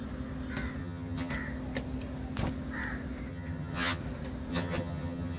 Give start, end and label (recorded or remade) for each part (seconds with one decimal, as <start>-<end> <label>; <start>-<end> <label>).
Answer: 0.0-0.8 recorded; 0.8-1.3 remade; 1.3-3.3 recorded; 3.3-4.0 remade; 4.0-4.5 recorded; 4.5-5.4 remade